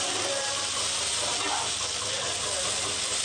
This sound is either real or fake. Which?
real